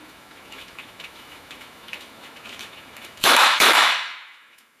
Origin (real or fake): fake